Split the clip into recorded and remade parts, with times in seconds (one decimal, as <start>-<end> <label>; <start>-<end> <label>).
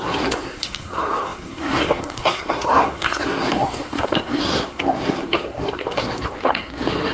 0.0-7.1 remade